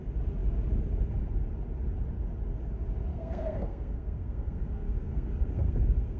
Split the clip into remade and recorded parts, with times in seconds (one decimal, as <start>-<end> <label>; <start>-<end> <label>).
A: 0.0-3.1 recorded; 3.1-6.2 remade